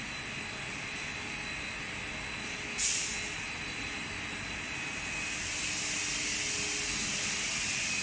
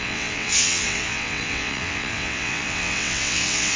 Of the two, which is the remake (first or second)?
second